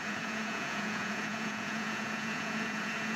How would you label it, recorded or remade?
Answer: remade